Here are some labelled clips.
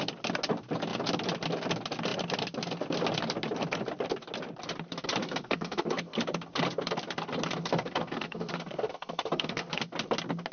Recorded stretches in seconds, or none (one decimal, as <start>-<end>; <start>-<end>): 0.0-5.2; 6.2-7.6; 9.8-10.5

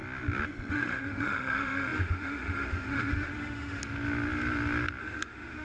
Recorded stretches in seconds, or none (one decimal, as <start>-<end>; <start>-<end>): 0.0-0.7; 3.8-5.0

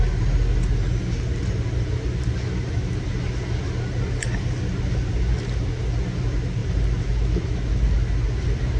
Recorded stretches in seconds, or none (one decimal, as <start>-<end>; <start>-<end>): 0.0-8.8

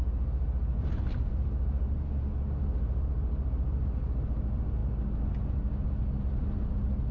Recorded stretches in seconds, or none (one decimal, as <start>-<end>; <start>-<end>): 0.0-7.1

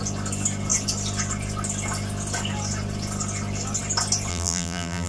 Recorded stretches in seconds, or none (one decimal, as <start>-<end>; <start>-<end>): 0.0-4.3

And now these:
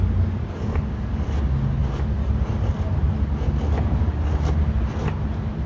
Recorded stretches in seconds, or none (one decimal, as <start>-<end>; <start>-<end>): 0.0-0.6; 1.2-5.7

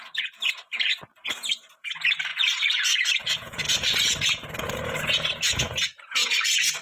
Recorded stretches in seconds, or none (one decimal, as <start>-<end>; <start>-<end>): none